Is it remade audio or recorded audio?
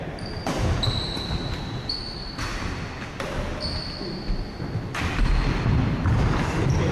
recorded